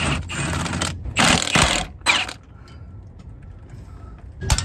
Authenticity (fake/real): real